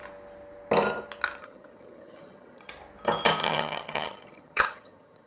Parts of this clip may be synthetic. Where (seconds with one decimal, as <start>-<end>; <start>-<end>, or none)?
1.4-2.7; 3.4-5.3